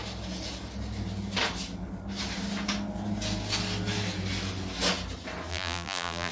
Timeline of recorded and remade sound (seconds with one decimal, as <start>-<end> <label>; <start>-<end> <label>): 0.0-5.5 recorded; 5.5-6.3 remade